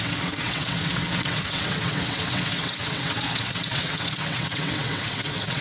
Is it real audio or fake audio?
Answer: fake